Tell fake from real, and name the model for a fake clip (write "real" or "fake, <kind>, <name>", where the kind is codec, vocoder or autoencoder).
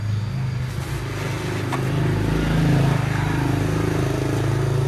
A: real